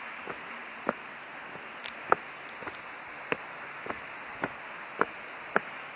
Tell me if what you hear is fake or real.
real